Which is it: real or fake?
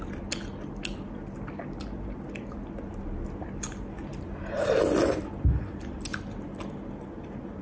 real